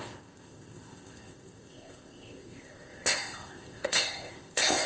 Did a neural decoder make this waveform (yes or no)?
yes